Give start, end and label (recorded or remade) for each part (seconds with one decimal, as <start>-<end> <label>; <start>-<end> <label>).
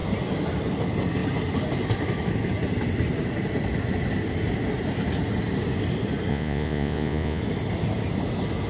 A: 0.0-6.3 recorded; 6.3-7.4 remade; 7.4-8.7 recorded